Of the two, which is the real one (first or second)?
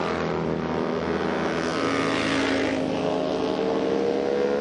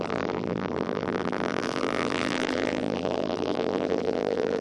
first